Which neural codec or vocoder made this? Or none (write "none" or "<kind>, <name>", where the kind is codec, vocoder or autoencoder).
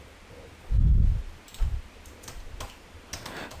none